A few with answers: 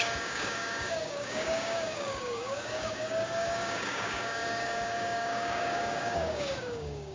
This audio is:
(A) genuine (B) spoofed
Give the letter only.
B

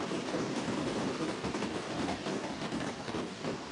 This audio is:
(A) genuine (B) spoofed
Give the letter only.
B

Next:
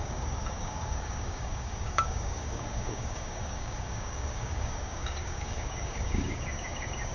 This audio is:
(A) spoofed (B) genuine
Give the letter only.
A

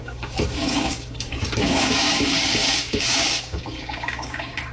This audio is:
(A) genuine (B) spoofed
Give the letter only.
B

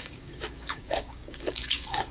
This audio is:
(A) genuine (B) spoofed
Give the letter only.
B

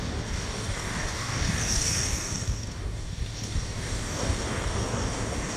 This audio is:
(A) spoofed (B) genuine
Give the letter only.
A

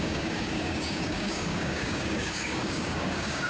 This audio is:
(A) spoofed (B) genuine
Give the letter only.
A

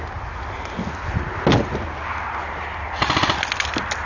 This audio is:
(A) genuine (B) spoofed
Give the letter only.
A